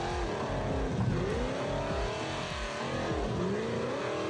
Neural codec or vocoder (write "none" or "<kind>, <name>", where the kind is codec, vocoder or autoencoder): none